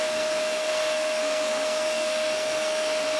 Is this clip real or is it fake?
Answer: fake